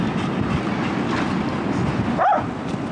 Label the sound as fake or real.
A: real